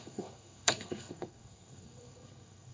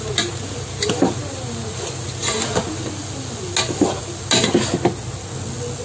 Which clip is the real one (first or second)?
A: second